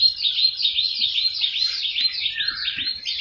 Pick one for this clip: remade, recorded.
remade